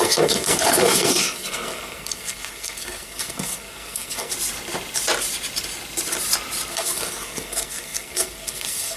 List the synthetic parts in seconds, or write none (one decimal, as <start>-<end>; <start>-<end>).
0.0-4.3; 6.7-9.0